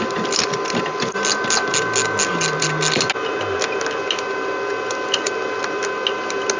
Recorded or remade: recorded